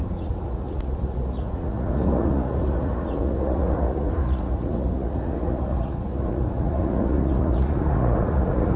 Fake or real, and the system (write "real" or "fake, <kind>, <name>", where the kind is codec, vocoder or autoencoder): fake, vocoder, Vocos